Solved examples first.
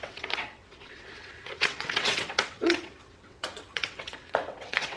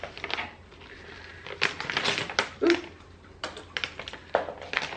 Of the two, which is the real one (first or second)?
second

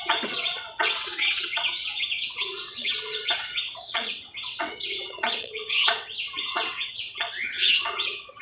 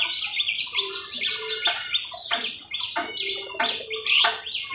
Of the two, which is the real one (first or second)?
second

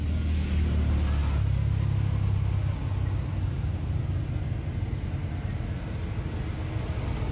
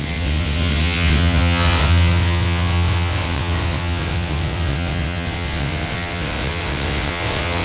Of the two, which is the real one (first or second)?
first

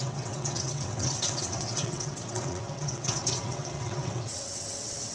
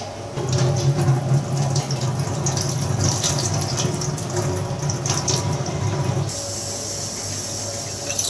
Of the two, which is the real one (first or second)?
second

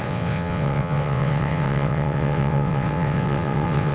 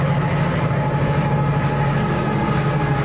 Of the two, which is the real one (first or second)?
second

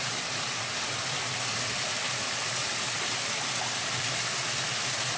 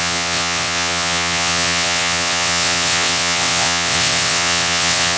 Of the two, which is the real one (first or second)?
first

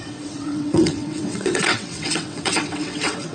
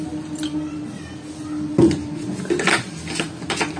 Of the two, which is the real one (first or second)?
second